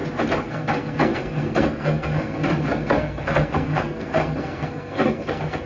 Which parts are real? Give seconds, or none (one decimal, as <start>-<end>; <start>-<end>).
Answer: 0.0-0.5